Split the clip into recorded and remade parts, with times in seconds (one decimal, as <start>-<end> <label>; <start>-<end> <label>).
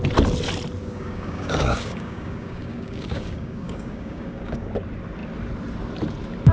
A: 0.0-0.8 recorded; 0.8-4.7 remade; 4.7-6.5 recorded